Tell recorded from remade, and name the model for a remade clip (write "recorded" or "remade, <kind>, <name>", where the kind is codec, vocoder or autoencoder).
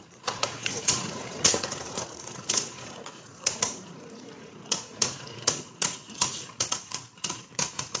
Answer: remade, vocoder, Vocos